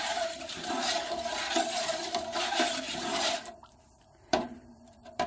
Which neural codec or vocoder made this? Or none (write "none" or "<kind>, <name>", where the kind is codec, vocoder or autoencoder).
vocoder, BigVGAN v2